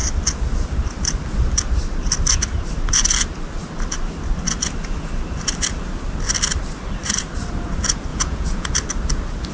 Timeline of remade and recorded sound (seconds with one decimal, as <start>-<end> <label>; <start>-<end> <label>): 0.0-8.1 recorded; 8.1-8.7 remade; 8.7-9.5 recorded